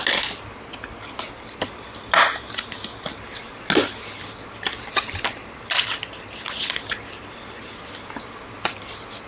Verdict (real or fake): real